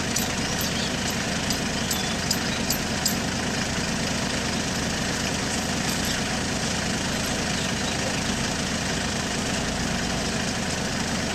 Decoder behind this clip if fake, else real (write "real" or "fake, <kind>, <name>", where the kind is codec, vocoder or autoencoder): real